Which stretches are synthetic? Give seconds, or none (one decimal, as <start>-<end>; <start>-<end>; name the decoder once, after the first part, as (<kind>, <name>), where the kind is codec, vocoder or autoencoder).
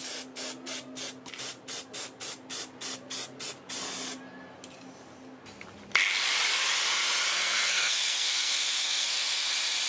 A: 7.3-9.5 (codec, SNAC)